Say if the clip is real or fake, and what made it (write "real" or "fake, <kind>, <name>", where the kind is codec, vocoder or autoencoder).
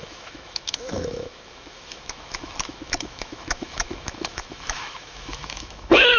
fake, autoencoder, DAC-VAE